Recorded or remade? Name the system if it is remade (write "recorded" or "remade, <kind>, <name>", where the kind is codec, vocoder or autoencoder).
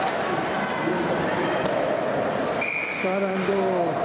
recorded